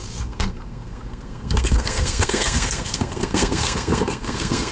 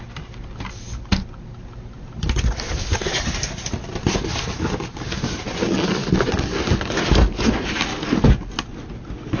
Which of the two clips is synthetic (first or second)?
first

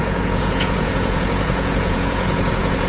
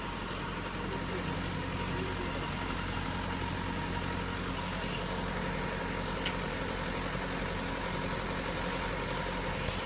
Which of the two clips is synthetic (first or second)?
first